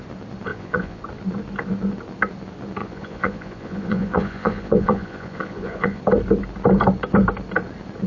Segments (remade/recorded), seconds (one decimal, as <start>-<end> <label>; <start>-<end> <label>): 0.0-0.5 recorded; 0.5-1.0 remade; 1.0-2.8 recorded; 2.8-6.0 remade; 6.0-8.1 recorded